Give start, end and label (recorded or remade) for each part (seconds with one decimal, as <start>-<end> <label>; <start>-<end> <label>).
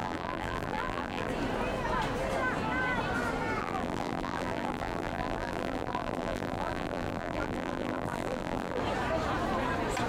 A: 0.0-1.3 remade; 1.3-3.6 recorded; 3.6-8.8 remade; 8.8-10.1 recorded